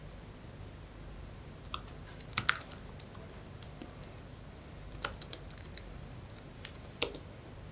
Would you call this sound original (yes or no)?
yes